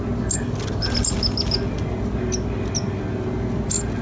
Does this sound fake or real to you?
real